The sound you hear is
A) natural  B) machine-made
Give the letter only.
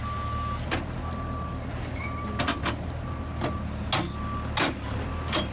A